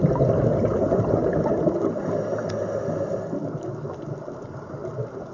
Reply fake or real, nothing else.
real